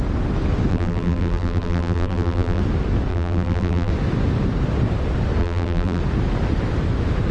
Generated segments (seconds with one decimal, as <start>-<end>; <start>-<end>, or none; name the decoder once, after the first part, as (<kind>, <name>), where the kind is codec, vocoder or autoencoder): 0.7-2.6 (vocoder, BigVGAN v2); 3.1-3.9; 5.4-6.0